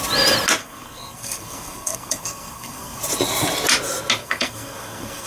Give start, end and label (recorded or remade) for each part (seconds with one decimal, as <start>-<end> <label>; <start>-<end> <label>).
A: 0.0-0.6 recorded; 0.6-3.0 remade; 3.0-4.2 recorded; 4.2-5.3 remade